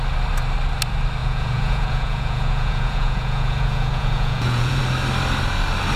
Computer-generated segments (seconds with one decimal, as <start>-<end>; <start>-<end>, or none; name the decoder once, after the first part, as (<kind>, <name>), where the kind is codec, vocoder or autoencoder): 1.2-4.8 (vocoder, Vocos)